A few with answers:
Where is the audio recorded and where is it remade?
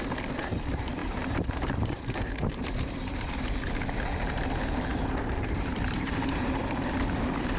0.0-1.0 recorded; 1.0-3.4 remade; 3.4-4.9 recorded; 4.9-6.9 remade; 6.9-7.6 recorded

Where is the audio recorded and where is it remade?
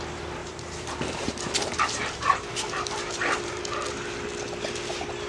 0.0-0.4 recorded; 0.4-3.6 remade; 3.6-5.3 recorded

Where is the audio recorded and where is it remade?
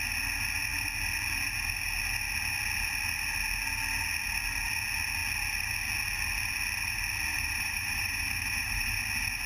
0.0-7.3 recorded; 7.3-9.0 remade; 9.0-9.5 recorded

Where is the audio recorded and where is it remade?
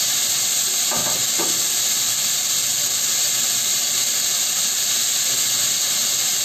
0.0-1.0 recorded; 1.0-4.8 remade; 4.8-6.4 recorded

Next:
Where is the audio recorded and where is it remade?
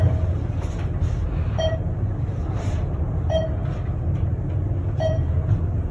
0.0-1.2 recorded; 1.2-3.4 remade; 3.4-5.9 recorded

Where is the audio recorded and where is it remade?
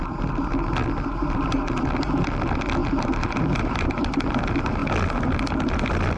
0.0-2.8 recorded; 2.8-4.3 remade; 4.3-6.2 recorded